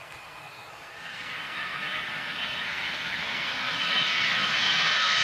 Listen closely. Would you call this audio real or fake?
fake